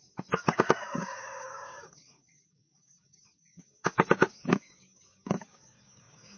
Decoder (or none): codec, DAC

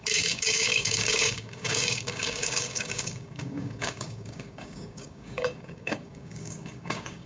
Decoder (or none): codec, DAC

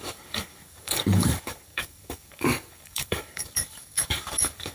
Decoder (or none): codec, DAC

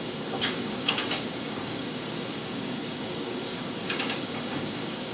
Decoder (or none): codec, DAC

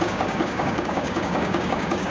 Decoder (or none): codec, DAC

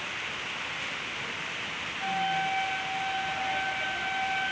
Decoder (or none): none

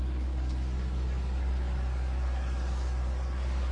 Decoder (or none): codec, DAC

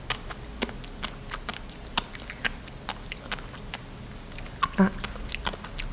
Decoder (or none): none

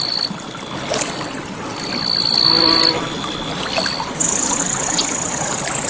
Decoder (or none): none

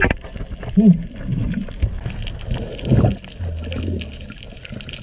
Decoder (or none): none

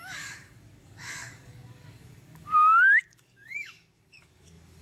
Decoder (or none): codec, DAC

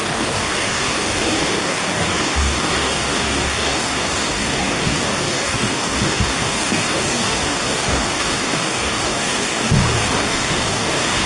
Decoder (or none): codec, DAC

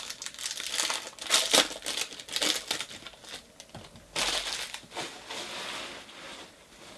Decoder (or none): none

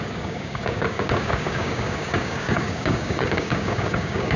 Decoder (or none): codec, DAC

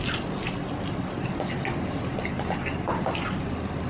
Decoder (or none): none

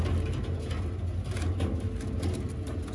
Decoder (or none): none